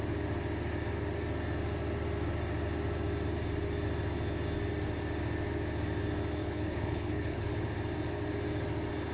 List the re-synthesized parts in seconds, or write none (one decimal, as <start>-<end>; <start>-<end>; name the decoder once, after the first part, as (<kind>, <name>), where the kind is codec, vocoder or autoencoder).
6.4-7.5 (codec, HILCodec)